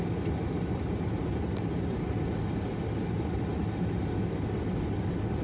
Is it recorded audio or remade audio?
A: recorded